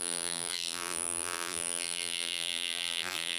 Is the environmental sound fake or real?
fake